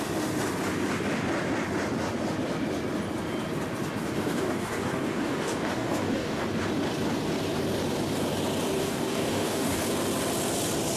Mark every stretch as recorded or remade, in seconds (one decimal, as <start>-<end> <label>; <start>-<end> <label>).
0.0-4.0 recorded; 4.0-6.4 remade; 6.4-8.8 recorded; 8.8-9.8 remade; 9.8-11.0 recorded